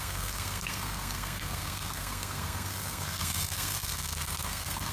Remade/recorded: remade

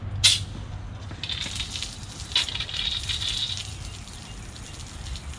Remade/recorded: recorded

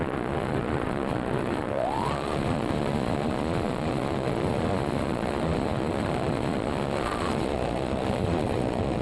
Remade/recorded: remade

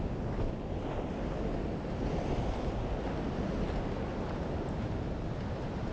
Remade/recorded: recorded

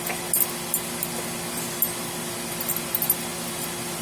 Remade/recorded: recorded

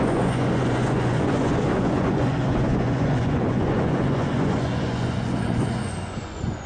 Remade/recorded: remade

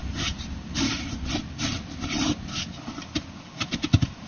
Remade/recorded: recorded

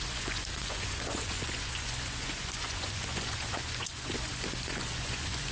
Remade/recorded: remade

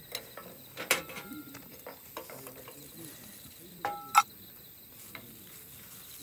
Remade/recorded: recorded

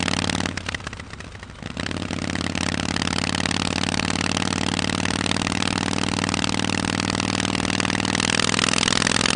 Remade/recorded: recorded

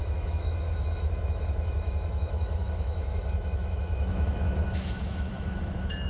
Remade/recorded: remade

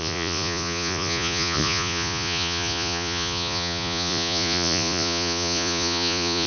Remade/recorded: remade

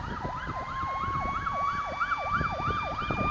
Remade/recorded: recorded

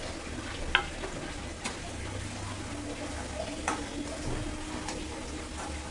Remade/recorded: recorded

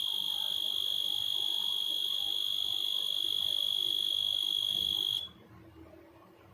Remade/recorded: remade